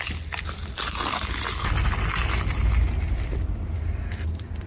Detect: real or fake real